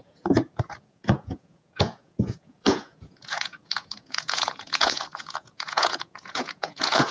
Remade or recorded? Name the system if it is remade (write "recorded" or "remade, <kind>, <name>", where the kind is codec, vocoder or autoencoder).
remade, vocoder, Vocos